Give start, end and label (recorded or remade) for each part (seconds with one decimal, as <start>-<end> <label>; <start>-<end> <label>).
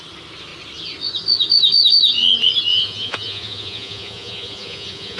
0.0-2.7 recorded; 2.7-5.2 remade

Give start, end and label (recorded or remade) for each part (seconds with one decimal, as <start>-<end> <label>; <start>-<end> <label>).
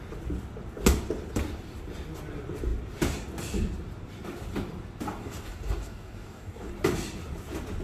0.0-5.2 recorded; 5.2-6.7 remade; 6.7-7.8 recorded